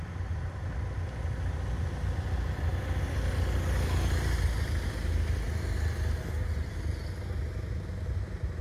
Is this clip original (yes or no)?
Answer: yes